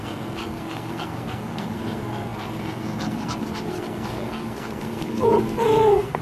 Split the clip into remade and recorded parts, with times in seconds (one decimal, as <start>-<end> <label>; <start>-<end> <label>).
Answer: 0.0-6.2 remade